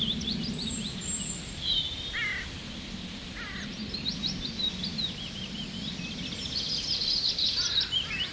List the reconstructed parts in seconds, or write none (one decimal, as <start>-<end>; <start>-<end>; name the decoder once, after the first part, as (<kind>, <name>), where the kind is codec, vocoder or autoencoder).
none

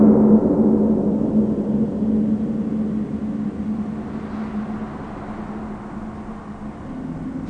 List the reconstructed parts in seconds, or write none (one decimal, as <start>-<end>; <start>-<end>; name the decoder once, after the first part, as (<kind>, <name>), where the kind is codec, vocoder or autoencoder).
none

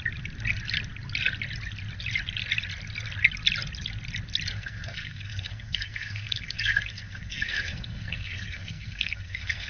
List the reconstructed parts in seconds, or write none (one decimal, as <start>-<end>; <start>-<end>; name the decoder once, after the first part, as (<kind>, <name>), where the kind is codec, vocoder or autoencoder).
4.5-9.7 (codec, SNAC)

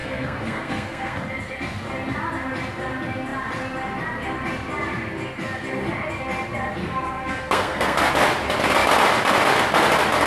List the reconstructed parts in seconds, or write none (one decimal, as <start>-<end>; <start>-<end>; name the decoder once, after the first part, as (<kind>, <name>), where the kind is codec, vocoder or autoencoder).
0.0-1.3 (codec, SNAC); 6.8-8.1

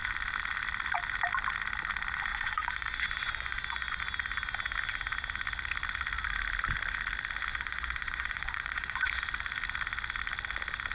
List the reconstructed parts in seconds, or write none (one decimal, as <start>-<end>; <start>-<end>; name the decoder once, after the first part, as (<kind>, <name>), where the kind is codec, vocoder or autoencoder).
2.3-4.0 (vocoder, Vocos); 7.5-9.2